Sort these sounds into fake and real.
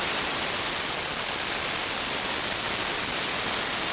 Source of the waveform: real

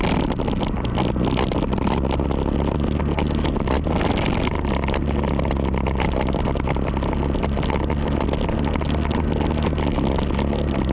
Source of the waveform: real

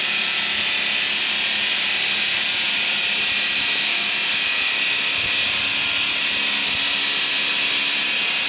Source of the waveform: real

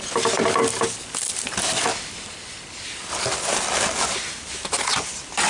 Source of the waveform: real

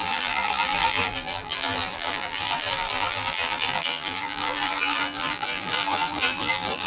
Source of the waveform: fake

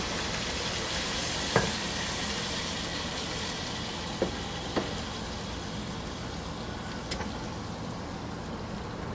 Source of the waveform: real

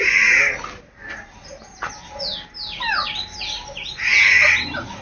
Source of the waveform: real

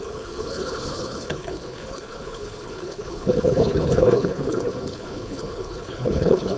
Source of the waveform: fake